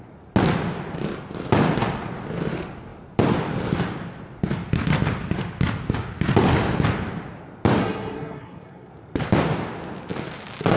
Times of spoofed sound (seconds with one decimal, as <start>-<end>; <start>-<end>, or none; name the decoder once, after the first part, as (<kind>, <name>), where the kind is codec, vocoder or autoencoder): 7.8-8.9 (codec, SNAC)